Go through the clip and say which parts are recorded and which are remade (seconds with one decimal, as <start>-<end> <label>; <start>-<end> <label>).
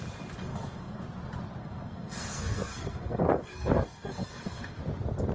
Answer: 0.0-0.5 recorded; 0.5-1.0 remade; 1.0-1.6 recorded; 1.6-4.8 remade; 4.8-5.3 recorded